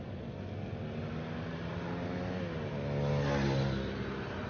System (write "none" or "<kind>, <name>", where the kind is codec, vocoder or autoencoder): none